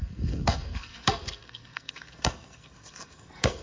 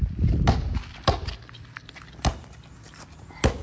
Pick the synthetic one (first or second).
first